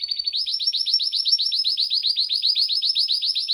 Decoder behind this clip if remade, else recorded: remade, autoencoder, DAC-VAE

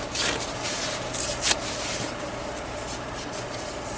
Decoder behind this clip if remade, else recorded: remade, vocoder, BigVGAN v2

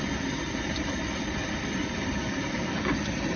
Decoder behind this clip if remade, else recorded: remade, vocoder, BigVGAN v2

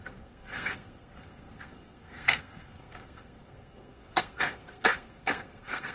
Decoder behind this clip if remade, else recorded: remade, codec, SNAC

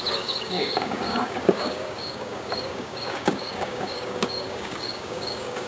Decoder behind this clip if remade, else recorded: remade, codec, DAC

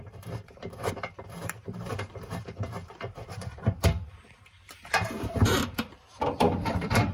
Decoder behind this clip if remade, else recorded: remade, vocoder, BigVGAN v2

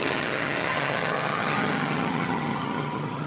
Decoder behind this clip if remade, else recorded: remade, vocoder, HiFi-GAN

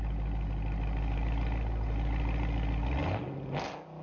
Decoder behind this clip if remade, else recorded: recorded